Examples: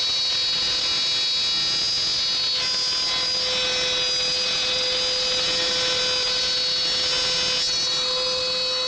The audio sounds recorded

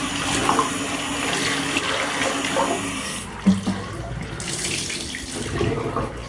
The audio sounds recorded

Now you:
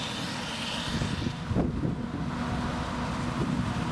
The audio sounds recorded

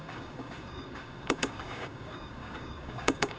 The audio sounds remade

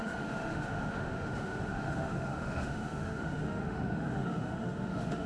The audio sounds remade